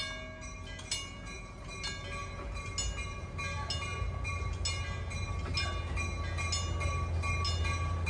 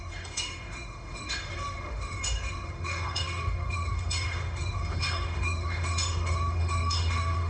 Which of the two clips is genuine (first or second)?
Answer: first